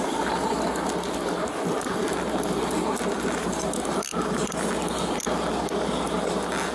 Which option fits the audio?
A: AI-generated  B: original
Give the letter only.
B